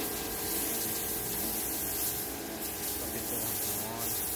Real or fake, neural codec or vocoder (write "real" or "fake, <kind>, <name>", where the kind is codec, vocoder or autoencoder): real